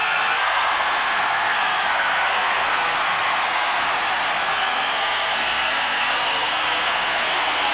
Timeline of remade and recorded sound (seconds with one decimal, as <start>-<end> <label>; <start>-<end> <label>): 0.0-3.9 remade; 3.9-4.4 recorded; 4.4-7.7 remade